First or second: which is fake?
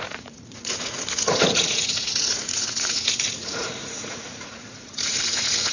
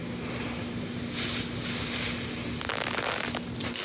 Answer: first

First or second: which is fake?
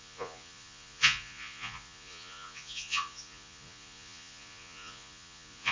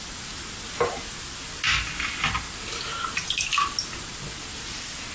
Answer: first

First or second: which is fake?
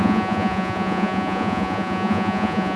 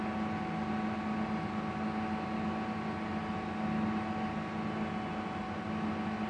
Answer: first